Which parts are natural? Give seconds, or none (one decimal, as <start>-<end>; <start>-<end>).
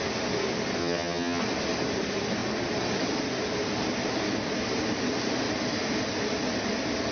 0.0-0.8; 1.4-7.1